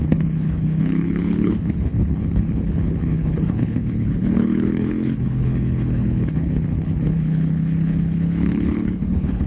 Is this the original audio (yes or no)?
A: no